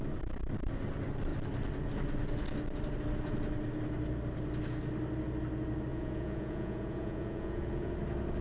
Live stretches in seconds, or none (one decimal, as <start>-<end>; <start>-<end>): 0.0-5.9; 7.9-8.4